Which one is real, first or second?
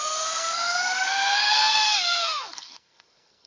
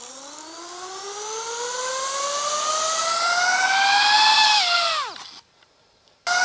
second